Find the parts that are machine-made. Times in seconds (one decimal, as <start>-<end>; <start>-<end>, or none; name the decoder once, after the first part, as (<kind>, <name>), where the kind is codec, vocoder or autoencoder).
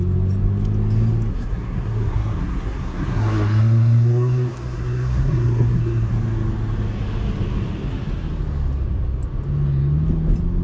1.3-6.1 (codec, SNAC)